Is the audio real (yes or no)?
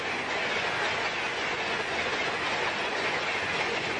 no